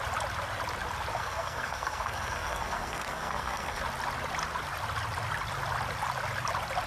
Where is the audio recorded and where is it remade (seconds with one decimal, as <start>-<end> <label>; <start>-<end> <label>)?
0.0-1.1 recorded; 1.1-3.8 remade; 3.8-6.9 recorded

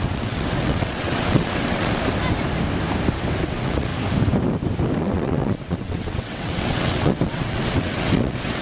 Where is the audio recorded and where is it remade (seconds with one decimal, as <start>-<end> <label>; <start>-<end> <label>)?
0.0-2.0 remade; 2.0-3.4 recorded; 3.4-3.9 remade; 3.9-5.0 recorded; 5.0-8.6 remade

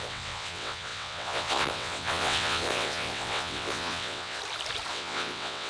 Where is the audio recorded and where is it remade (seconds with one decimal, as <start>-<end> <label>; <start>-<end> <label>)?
0.0-4.4 remade; 4.4-4.9 recorded; 4.9-5.7 remade

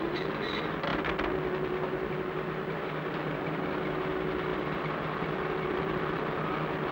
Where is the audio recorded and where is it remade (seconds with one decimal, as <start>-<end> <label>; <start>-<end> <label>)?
0.0-4.5 recorded; 4.5-6.5 remade; 6.5-6.9 recorded

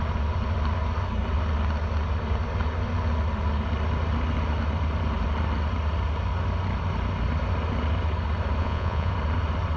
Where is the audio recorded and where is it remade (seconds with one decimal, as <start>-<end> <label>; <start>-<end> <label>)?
0.0-8.6 recorded; 8.6-9.1 remade; 9.1-9.8 recorded